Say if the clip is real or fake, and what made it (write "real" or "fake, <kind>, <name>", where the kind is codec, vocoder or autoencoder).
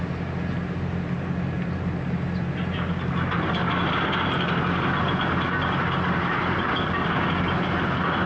real